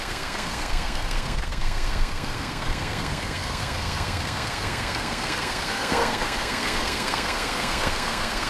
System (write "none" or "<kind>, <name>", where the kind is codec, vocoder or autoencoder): codec, SNAC